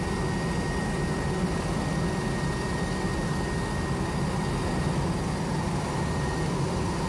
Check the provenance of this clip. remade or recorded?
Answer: recorded